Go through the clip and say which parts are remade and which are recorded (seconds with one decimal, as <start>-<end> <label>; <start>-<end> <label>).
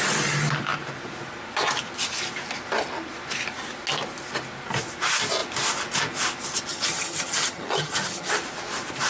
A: 0.0-6.7 recorded; 6.7-8.3 remade; 8.3-9.1 recorded